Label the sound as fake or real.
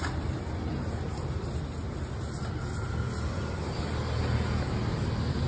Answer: real